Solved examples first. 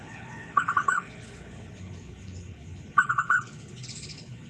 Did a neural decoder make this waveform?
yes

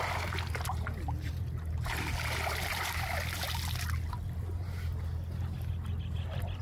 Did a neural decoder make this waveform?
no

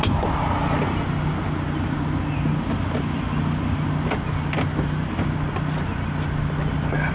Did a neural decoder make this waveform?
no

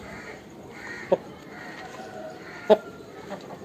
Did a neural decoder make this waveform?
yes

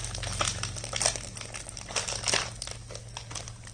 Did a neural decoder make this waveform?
no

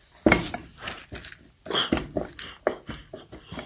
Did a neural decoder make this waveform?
yes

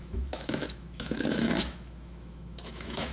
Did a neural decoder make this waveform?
yes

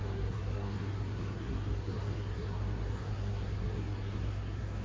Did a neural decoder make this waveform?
yes